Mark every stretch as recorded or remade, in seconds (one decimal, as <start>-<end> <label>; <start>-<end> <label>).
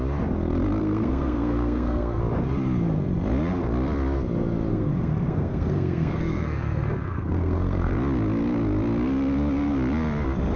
0.0-0.8 recorded; 0.8-2.2 remade; 2.2-4.7 recorded; 4.7-7.9 remade; 7.9-10.6 recorded